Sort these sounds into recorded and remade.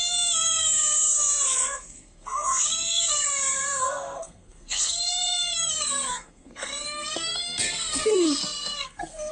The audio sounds remade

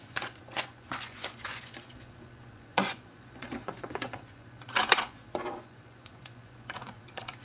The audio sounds remade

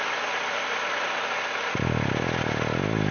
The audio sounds recorded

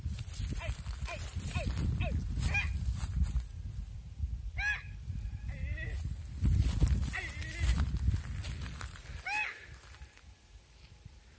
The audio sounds recorded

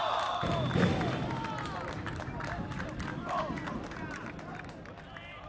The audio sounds recorded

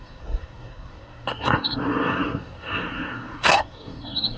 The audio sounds remade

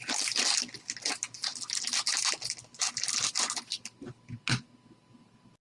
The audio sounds recorded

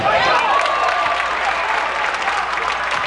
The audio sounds recorded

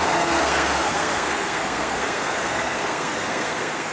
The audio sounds remade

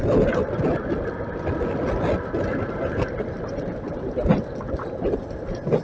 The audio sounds recorded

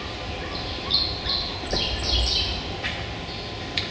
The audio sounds recorded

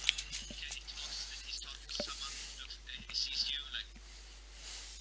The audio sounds recorded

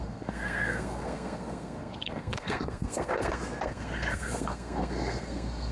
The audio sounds remade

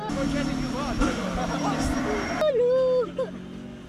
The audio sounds recorded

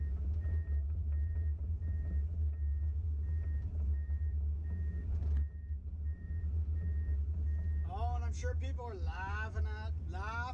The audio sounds recorded